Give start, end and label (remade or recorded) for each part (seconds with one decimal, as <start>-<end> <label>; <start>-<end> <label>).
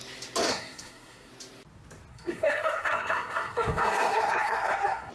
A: 0.0-0.5 recorded; 0.5-1.3 remade; 1.3-2.1 recorded; 2.1-5.1 remade